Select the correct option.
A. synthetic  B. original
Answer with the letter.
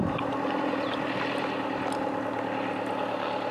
B